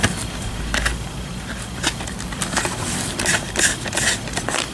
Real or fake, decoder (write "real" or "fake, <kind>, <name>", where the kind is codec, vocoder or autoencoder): real